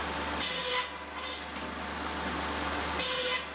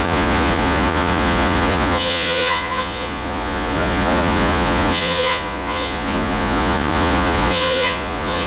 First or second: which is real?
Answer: first